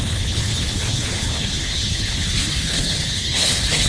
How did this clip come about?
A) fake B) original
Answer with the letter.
A